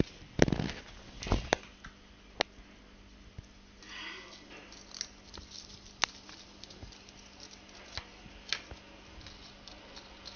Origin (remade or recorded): recorded